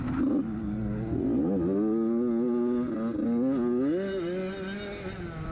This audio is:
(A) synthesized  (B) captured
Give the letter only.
B